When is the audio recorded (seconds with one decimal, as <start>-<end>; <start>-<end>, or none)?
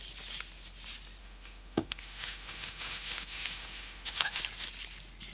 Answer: 0.0-1.2; 4.4-5.3